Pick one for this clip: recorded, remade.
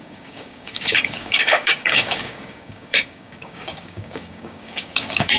remade